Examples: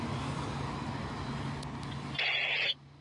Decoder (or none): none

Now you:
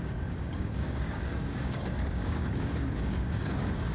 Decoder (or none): codec, DAC